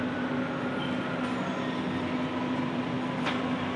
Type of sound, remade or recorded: recorded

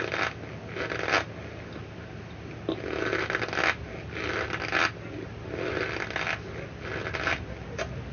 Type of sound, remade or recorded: recorded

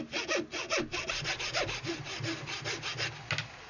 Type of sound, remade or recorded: recorded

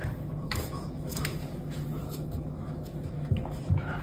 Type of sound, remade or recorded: remade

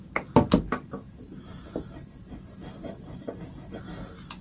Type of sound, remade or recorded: recorded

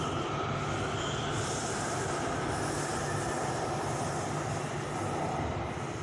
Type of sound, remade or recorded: recorded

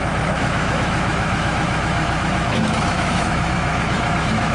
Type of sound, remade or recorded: remade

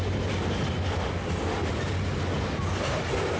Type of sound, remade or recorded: recorded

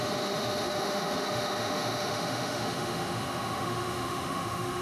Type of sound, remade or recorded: remade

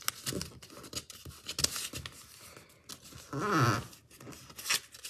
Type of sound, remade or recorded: recorded